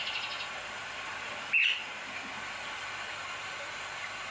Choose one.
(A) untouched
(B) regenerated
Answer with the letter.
A